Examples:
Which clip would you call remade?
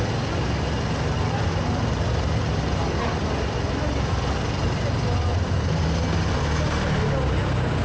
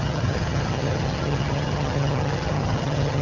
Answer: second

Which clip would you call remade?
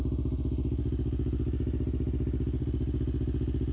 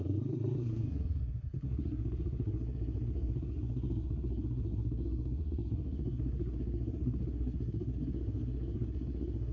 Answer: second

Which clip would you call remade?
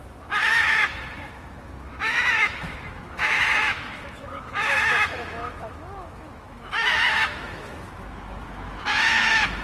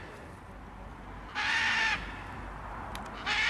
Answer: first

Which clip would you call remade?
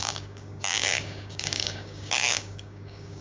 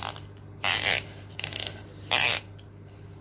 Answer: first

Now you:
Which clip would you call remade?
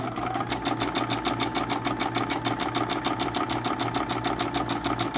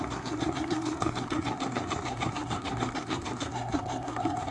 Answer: second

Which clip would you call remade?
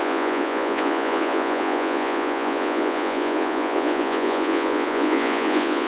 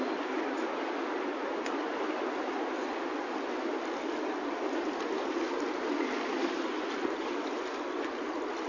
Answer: first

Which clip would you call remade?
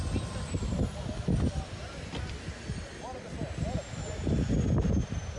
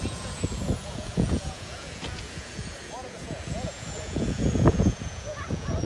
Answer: second